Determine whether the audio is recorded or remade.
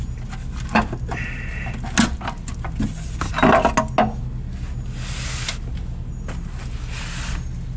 recorded